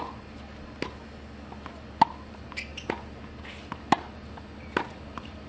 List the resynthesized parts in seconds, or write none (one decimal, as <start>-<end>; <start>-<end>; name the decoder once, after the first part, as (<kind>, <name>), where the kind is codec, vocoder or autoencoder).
none